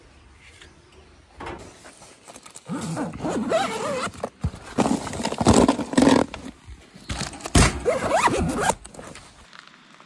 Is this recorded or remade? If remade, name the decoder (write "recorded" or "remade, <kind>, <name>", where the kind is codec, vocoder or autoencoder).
recorded